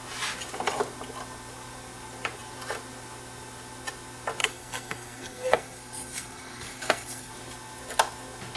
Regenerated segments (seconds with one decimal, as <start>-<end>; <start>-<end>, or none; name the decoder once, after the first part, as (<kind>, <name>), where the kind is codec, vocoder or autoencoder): 4.4-7.3 (codec, SNAC)